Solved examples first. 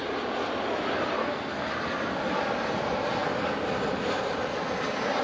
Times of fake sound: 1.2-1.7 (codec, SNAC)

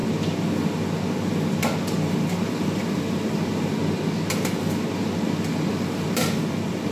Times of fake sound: 2.5-3.8 (vocoder, BigVGAN v2); 5.7-6.9